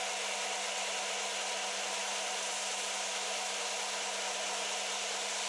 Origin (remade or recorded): recorded